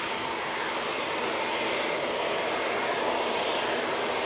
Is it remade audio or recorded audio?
recorded